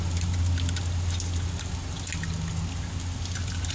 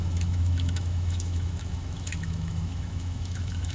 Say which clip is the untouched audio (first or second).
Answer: first